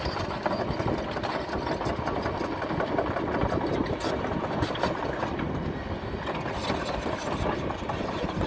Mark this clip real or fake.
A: real